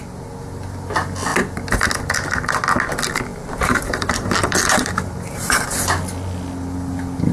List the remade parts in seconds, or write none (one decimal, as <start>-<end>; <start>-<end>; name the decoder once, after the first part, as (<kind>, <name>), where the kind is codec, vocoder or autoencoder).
3.3-5.6 (vocoder, BigVGAN v2)